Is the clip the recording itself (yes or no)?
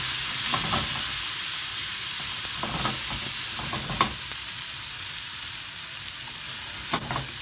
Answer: yes